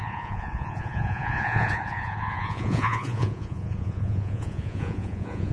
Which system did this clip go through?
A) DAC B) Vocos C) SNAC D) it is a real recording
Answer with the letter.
B